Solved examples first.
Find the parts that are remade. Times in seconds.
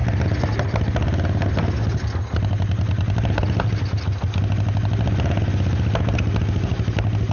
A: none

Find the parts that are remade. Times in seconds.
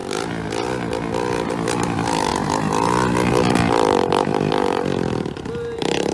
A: 1.5-2.3 (vocoder, BigVGAN v2); 3.3-6.1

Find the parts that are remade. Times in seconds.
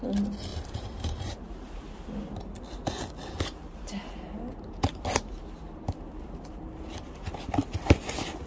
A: 0.5-2.0 (vocoder, BigVGAN v2)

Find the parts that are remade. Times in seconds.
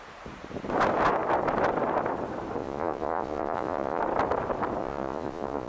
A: 2.6-4.0 (vocoder, Vocos); 4.8-5.7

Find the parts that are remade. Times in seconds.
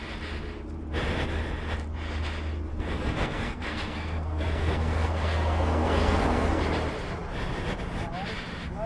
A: 2.7-6.6 (codec, SNAC)